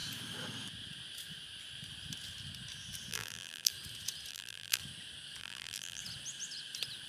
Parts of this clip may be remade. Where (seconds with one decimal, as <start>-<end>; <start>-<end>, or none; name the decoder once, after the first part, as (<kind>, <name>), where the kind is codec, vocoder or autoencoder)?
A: 3.1-3.7 (vocoder, BigVGAN v2); 4.3-4.8; 5.4-6.0